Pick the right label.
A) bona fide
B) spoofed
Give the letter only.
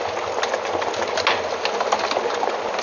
A